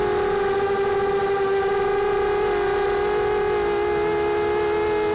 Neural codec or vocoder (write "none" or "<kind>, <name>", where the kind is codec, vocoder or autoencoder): none